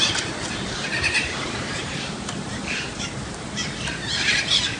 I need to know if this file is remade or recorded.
remade